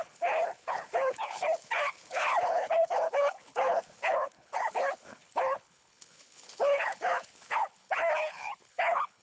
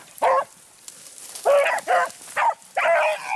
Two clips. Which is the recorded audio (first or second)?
second